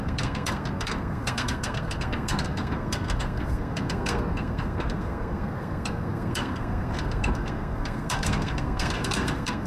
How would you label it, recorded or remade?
remade